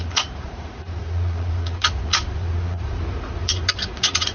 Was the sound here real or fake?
fake